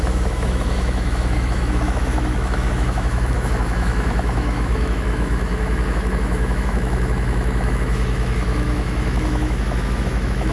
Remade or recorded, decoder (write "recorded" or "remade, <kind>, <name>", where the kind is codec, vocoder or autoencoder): remade, autoencoder, DAC-VAE